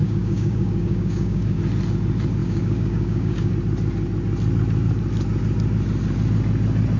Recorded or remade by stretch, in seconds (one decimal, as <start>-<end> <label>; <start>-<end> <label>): 0.0-1.6 remade; 1.6-2.4 recorded; 2.4-3.5 remade; 3.5-7.0 recorded